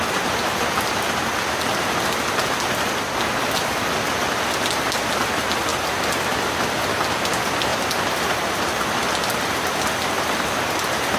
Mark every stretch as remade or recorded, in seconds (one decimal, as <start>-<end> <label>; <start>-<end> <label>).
0.0-5.7 recorded; 5.7-6.9 remade; 6.9-7.7 recorded; 7.7-9.5 remade; 9.5-11.2 recorded